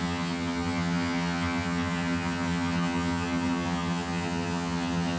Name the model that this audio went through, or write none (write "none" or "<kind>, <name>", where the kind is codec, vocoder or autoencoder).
vocoder, HiFi-GAN